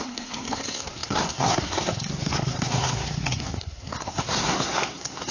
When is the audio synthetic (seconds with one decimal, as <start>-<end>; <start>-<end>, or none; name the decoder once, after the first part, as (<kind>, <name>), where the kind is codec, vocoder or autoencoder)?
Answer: 0.0-5.3 (codec, SNAC)